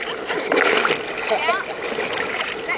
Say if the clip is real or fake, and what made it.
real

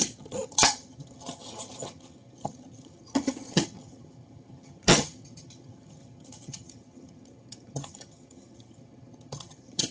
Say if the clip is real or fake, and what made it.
fake, vocoder, HiFi-GAN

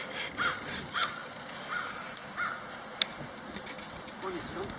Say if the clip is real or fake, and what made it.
real